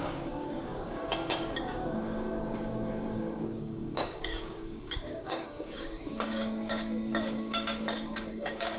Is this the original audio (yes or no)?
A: no